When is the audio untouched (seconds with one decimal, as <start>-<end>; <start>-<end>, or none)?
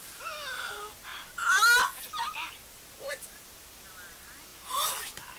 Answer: 0.0-5.4